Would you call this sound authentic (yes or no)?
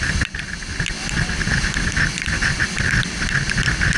yes